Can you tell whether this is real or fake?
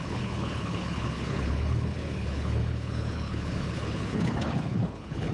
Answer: fake